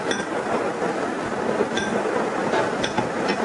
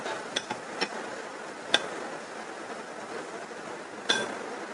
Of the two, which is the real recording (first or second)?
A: first